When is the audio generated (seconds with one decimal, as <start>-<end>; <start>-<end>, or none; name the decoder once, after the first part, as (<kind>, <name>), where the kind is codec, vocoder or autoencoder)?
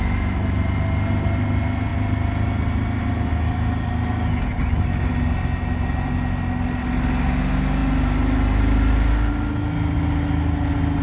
none